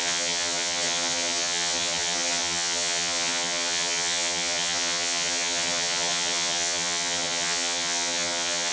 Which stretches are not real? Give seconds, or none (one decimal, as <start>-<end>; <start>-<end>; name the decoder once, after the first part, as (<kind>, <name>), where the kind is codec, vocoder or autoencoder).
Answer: 0.0-8.7 (vocoder, HiFi-GAN)